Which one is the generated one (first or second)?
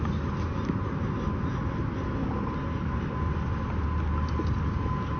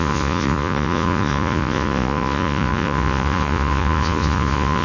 second